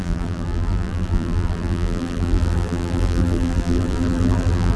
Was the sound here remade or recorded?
remade